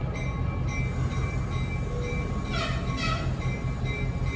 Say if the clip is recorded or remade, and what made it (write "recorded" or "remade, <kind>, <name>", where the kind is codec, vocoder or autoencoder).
recorded